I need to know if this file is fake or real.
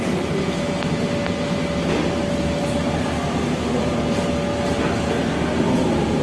real